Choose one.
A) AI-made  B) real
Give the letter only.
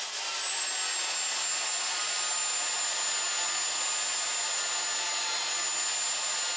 B